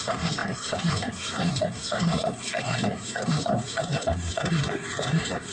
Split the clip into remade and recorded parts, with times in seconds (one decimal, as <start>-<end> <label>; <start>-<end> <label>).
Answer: 0.0-5.5 remade